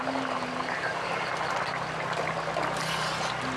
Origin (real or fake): real